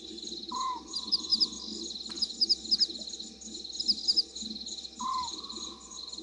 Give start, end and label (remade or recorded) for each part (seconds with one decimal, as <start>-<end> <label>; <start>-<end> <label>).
0.0-1.3 remade; 1.3-5.0 recorded; 5.0-6.2 remade